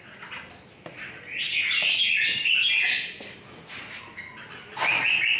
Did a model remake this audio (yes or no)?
no